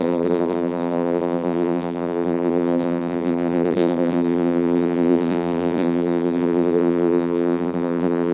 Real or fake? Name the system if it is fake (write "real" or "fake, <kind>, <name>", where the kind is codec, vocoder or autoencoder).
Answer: fake, vocoder, BigVGAN v2